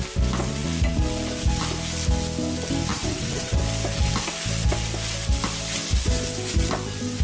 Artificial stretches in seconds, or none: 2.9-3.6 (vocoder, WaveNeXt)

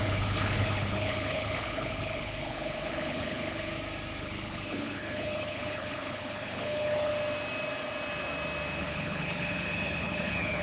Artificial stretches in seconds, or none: 0.0-3.7 (codec, HILCodec); 4.2-7.1; 8.8-10.6

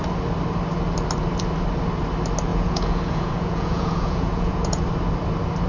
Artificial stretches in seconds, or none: 2.5-4.8 (vocoder, Vocos)

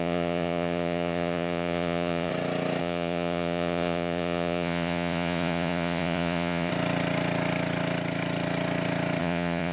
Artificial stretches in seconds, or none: 0.0-2.3 (vocoder, Vocos); 2.8-6.7; 9.2-9.7

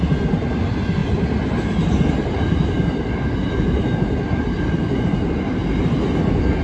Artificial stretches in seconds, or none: none

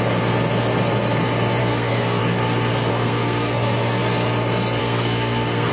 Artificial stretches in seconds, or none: 1.6-2.2 (codec, SNAC); 2.9-4.0; 4.8-5.7

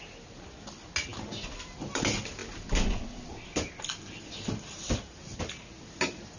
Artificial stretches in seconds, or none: none